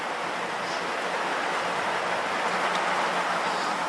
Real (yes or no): yes